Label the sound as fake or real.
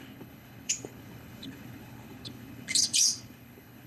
fake